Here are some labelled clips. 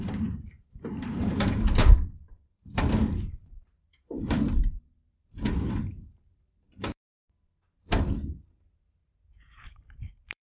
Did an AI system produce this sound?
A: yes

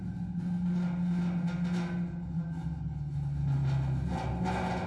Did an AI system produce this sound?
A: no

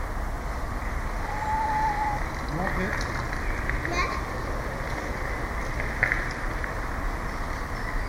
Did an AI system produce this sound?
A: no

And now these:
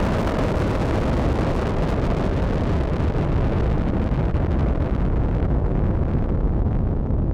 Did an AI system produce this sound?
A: no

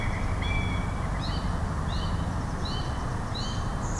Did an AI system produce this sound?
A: no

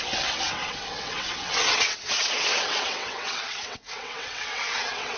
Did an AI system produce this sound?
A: yes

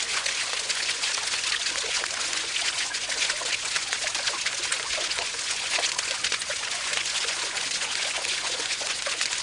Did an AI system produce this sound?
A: yes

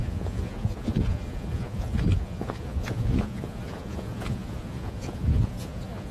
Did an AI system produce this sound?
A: yes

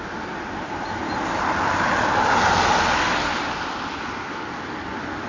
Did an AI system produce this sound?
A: no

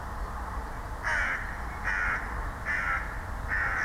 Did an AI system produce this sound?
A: no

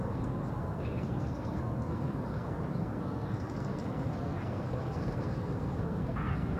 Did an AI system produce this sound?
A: yes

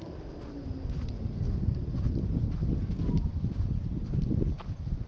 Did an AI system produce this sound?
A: no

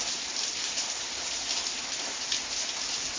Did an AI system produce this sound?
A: no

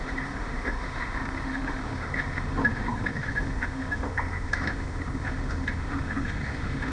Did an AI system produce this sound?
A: yes